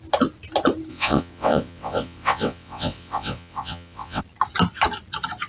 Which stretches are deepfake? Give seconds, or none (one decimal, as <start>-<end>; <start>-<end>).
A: 0.9-4.2